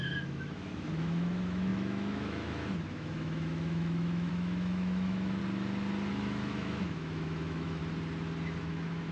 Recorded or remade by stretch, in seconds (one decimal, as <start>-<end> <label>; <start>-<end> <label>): 0.0-5.4 remade; 5.4-6.1 recorded; 6.1-7.8 remade; 7.8-8.6 recorded; 8.6-9.1 remade